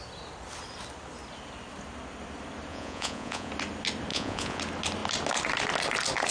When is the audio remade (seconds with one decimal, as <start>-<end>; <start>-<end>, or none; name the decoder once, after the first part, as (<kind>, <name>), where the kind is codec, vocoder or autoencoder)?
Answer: 2.7-3.5 (vocoder, Vocos); 4.1-4.6